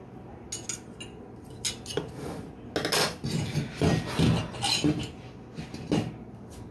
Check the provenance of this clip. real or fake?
real